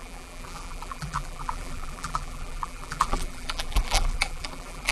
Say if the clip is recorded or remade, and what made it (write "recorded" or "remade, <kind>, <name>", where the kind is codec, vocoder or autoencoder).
remade, vocoder, BigVGAN v2